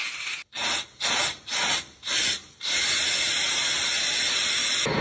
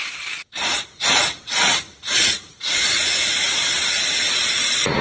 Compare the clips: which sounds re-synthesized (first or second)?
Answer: second